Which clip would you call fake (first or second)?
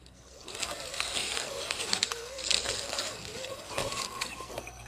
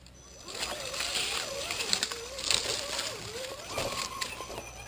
first